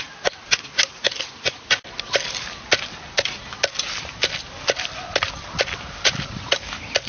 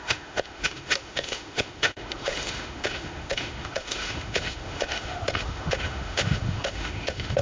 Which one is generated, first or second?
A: second